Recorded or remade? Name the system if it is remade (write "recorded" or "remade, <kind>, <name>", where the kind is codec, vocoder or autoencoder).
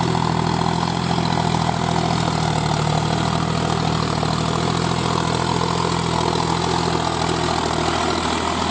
recorded